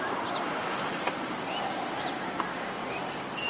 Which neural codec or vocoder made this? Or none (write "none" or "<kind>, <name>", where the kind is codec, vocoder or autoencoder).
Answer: vocoder, BigVGAN v2